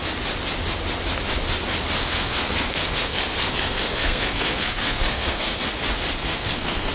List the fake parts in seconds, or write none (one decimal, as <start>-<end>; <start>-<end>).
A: 2.0-5.6; 6.2-6.9

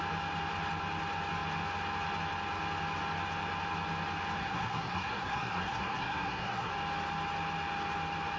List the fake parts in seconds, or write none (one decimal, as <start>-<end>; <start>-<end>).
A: 4.4-6.7

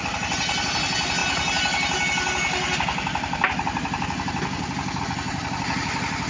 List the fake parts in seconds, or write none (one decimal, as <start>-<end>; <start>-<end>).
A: none

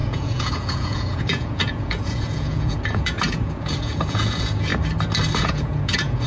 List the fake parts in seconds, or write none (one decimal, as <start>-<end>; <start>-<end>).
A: 0.0-4.7; 5.4-6.3

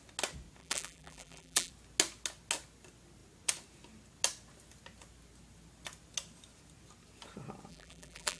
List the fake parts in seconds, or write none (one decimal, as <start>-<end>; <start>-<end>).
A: 0.6-1.7; 7.7-8.4